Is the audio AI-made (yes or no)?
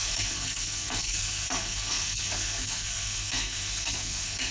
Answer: yes